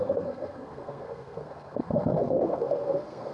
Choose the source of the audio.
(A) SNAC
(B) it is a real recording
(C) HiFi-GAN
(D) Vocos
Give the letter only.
A